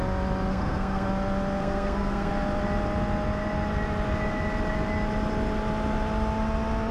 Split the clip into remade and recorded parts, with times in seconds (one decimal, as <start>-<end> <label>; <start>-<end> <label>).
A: 0.0-0.5 recorded; 0.5-1.1 remade; 1.1-1.6 recorded; 1.6-2.3 remade; 2.3-6.9 recorded